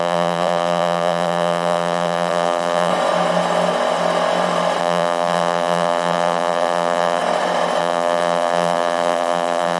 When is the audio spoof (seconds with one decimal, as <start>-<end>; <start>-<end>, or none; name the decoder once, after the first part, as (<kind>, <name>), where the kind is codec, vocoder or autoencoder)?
0.0-2.9 (vocoder, BigVGAN v2); 4.8-7.2; 7.8-9.8